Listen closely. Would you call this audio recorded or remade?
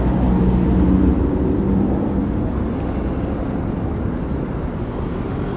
recorded